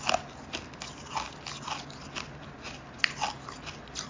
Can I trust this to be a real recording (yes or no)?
yes